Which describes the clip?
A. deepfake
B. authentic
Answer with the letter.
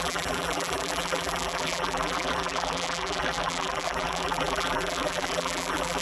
A